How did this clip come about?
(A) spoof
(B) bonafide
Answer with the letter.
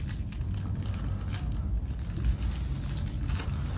B